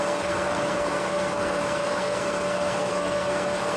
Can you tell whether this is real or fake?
fake